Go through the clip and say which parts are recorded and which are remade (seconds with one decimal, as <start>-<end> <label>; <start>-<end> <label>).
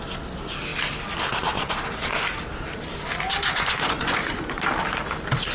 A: 0.0-3.5 recorded; 3.5-4.6 remade; 4.6-5.5 recorded